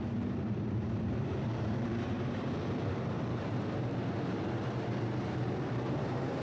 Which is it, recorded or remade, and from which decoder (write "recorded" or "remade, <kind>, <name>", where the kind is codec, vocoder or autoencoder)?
remade, vocoder, BigVGAN v2